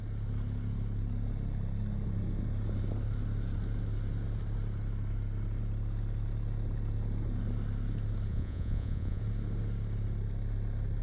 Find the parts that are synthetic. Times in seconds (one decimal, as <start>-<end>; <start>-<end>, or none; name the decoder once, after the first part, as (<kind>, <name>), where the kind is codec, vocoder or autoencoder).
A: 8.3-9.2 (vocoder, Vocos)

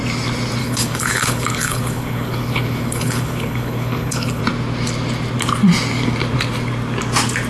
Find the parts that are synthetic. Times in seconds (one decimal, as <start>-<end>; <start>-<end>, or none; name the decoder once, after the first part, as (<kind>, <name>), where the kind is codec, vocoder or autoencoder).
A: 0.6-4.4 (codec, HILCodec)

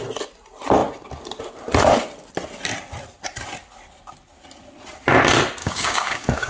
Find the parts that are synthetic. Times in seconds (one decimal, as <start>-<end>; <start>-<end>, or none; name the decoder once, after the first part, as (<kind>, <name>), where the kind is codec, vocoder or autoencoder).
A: 5.6-6.5 (codec, DAC)

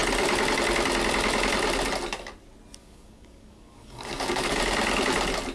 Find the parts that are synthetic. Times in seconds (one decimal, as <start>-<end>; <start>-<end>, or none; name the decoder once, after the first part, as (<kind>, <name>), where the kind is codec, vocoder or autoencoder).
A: 2.8-4.6 (codec, DAC)

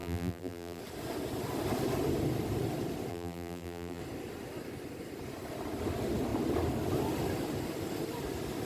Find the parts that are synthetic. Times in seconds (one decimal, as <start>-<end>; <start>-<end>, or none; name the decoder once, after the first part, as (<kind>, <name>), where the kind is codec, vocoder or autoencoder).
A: 0.0-0.8 (vocoder, BigVGAN v2); 3.1-4.0